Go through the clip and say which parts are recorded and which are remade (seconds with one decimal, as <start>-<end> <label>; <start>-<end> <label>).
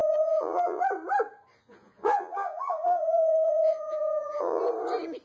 0.0-0.8 remade; 0.8-1.5 recorded; 1.5-4.6 remade; 4.6-5.2 recorded